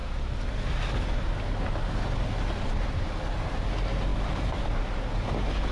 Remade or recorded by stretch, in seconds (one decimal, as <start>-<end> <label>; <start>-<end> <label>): 0.0-0.9 remade; 0.9-4.1 recorded; 4.1-5.1 remade; 5.1-5.7 recorded